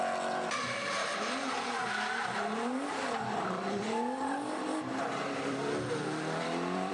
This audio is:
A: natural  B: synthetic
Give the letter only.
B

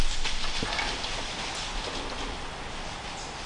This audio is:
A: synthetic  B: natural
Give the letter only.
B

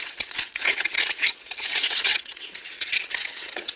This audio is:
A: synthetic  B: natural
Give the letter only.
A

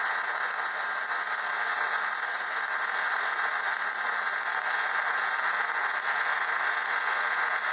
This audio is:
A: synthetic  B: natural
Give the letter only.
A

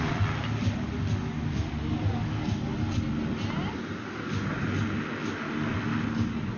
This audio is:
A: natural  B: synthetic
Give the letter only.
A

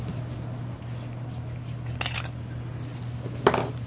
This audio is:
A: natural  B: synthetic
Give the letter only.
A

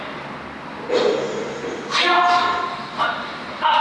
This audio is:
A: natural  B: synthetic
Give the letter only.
A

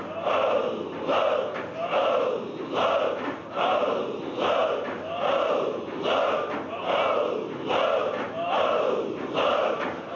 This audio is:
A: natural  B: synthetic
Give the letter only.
A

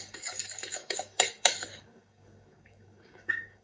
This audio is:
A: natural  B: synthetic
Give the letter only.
B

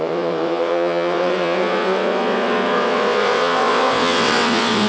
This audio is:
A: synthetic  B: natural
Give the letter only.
A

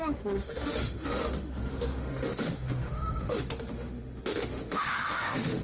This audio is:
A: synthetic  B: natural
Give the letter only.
A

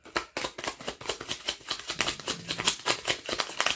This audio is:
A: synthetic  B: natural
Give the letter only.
B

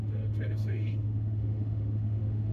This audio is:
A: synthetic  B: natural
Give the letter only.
A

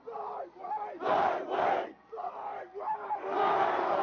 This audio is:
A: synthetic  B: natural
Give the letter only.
B